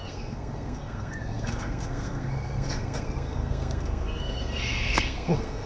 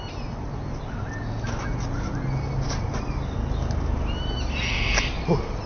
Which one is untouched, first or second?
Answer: second